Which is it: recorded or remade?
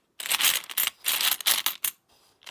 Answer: recorded